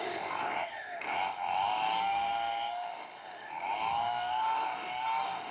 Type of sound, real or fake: fake